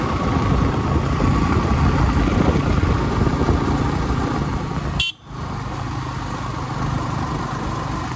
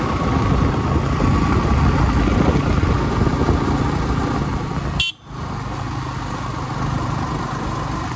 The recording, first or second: second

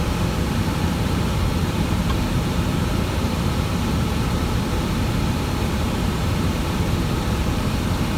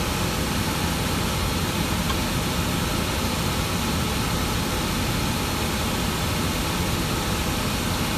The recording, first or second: second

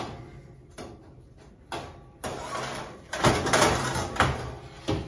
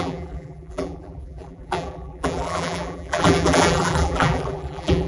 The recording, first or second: first